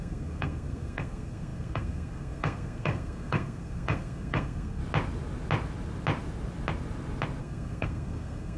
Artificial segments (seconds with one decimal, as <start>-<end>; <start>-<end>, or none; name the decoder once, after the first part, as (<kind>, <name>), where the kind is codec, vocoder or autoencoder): 0.0-4.8 (codec, SNAC); 7.4-8.6